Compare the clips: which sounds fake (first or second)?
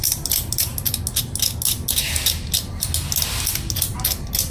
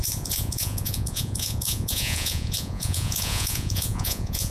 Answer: second